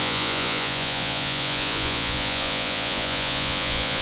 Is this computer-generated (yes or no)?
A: yes